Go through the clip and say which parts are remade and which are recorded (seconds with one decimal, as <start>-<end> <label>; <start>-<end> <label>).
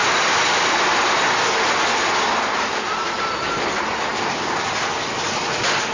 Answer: 0.0-5.9 recorded